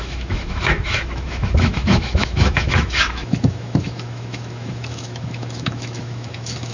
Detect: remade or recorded remade